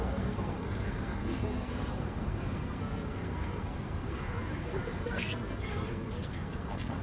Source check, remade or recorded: remade